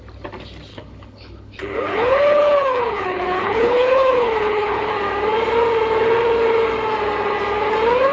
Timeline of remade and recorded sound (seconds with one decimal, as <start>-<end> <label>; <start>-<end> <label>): 0.0-0.7 recorded; 0.7-4.9 remade; 4.9-8.1 recorded